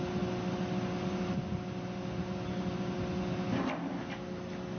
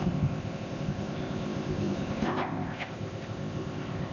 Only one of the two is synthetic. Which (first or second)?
second